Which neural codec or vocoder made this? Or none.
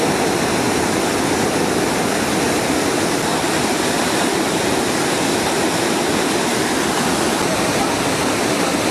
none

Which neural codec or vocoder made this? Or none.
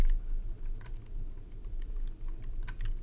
none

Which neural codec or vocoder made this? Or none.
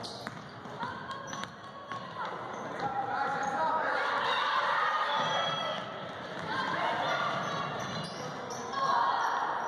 none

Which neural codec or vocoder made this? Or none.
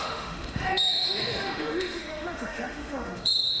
autoencoder, DAC-VAE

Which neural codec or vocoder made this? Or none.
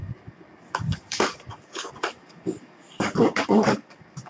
codec, DAC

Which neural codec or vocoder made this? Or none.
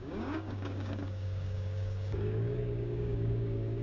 codec, DAC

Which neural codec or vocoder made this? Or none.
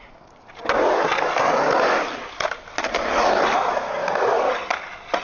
none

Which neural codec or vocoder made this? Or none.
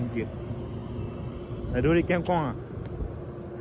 none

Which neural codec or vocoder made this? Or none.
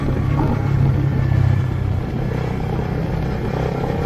none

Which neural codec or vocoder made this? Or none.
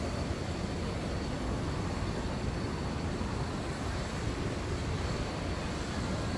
none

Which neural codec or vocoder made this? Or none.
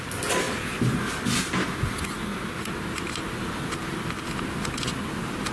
none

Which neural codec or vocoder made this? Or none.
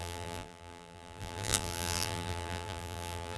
vocoder, BigVGAN v2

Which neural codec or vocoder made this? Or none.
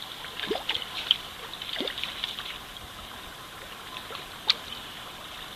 none